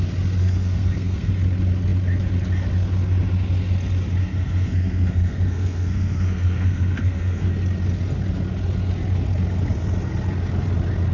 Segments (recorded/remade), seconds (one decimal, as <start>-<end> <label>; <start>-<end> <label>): 0.0-0.4 recorded; 0.4-1.3 remade; 1.3-4.2 recorded; 4.2-7.5 remade; 7.5-11.1 recorded